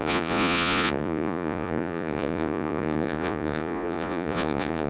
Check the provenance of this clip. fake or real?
fake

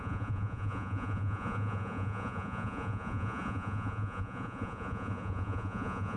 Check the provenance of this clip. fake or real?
fake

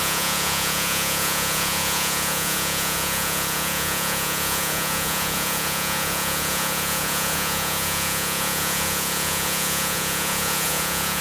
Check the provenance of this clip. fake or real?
fake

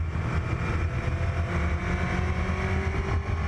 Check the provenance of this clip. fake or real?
real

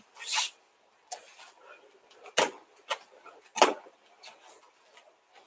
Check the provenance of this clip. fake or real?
real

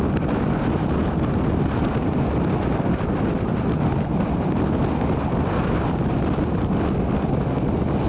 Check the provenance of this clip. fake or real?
real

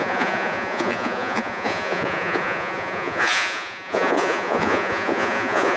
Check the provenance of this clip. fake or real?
fake